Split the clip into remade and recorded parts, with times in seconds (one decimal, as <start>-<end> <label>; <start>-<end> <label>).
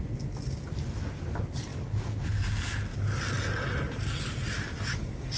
0.0-5.4 recorded